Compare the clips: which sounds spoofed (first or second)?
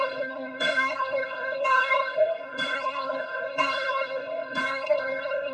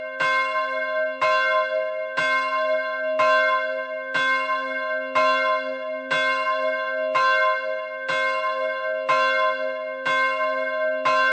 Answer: first